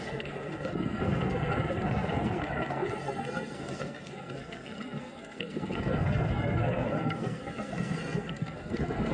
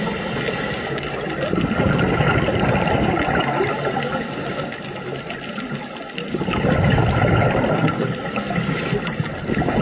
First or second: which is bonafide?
second